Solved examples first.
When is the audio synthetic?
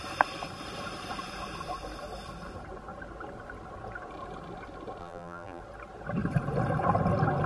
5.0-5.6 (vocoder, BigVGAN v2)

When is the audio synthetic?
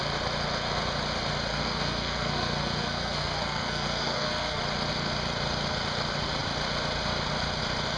1.5-4.6 (codec, SNAC)